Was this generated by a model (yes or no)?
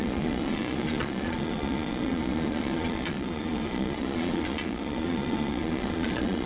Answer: yes